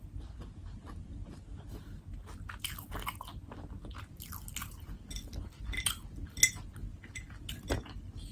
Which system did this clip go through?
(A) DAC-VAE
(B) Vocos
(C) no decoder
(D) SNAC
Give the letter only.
C